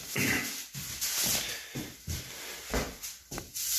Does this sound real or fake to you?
real